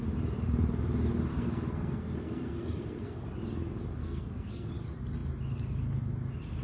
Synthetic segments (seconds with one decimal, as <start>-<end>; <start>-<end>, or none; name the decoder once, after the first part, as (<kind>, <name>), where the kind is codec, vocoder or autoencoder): 1.3-3.2 (codec, SNAC); 4.0-4.7